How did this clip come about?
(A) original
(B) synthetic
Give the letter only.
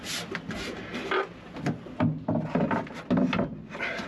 A